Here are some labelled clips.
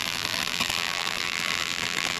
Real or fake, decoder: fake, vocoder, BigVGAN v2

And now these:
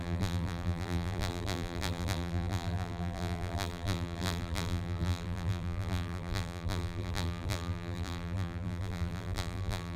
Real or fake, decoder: fake, vocoder, BigVGAN v2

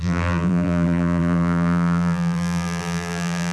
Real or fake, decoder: fake, vocoder, BigVGAN v2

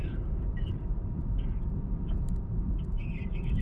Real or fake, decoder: fake, vocoder, BigVGAN v2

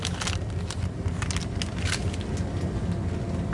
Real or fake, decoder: real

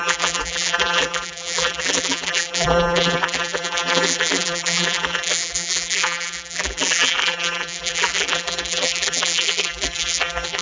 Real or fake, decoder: fake, vocoder, BigVGAN v2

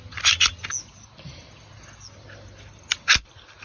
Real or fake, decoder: real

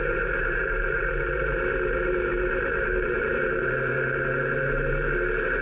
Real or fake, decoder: fake, vocoder, BigVGAN v2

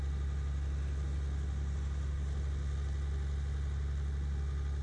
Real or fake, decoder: real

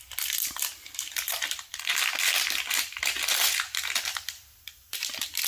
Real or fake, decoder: fake, vocoder, BigVGAN v2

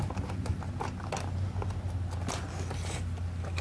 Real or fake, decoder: real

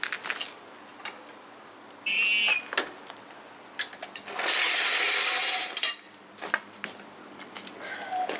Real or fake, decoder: real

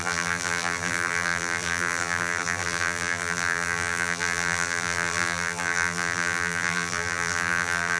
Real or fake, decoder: fake, vocoder, BigVGAN v2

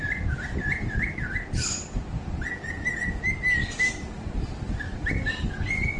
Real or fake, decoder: real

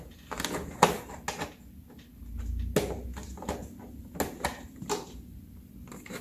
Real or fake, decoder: real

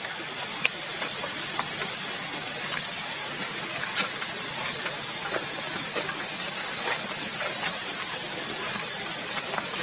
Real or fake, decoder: real